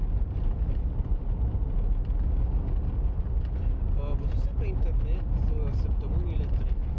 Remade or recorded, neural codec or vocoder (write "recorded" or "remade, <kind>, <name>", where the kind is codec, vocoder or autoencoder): recorded